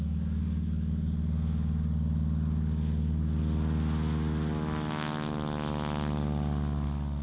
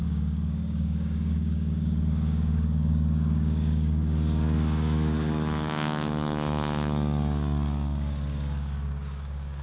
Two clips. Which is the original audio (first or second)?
first